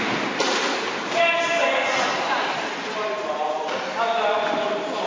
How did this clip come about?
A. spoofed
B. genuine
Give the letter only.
B